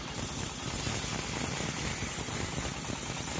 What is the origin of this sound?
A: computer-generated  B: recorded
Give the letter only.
B